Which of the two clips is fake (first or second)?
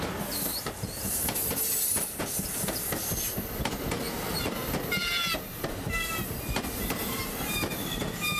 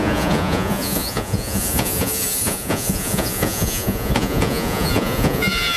second